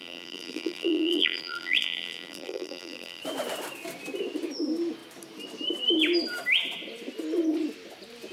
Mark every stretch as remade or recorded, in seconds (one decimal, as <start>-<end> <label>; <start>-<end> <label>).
0.0-3.2 remade; 3.2-8.3 recorded